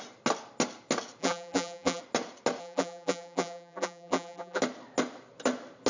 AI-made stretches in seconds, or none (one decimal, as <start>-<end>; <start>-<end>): 1.2-2.0; 2.6-4.6